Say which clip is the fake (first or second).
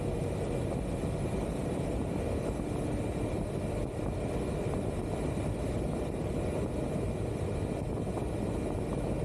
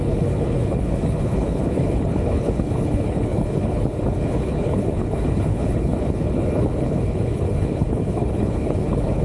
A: second